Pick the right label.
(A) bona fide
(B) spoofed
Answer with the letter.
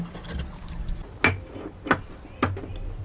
A